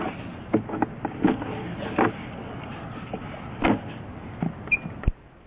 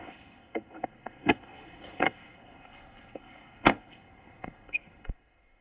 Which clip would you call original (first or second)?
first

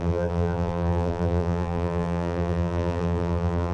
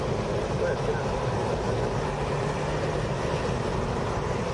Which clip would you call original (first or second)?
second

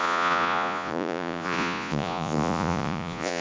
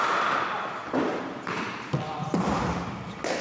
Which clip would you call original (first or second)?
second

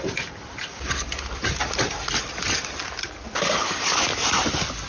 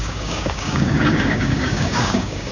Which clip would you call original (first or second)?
first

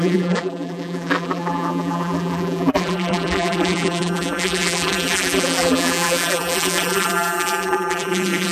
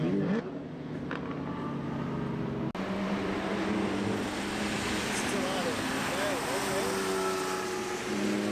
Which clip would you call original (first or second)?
second